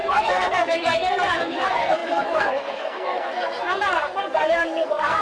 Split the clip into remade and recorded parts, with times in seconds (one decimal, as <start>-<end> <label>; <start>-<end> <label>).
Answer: 0.0-5.2 remade